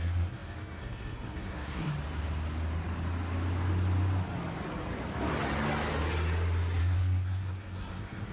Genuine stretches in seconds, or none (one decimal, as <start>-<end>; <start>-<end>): 1.9-6.8